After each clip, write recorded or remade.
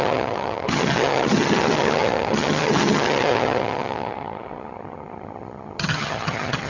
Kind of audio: remade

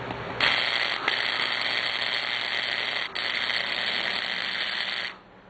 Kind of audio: recorded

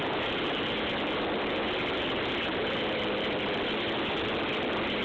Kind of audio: recorded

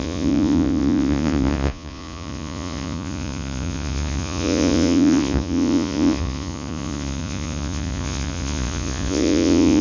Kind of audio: remade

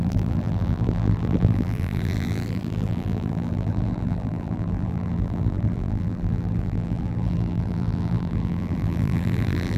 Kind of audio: remade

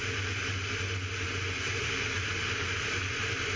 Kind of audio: recorded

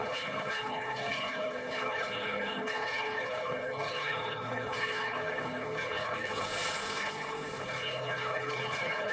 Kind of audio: remade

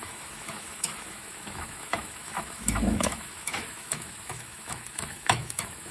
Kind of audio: remade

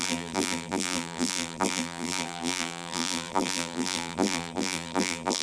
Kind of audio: remade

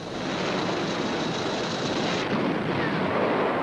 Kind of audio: recorded